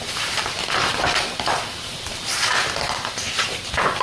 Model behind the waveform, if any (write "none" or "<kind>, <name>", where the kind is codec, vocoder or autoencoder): vocoder, BigVGAN v2